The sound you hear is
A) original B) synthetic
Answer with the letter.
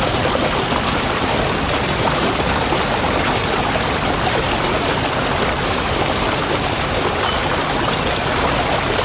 A